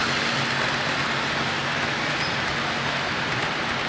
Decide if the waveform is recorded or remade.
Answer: recorded